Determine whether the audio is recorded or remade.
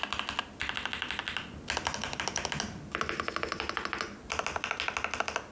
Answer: recorded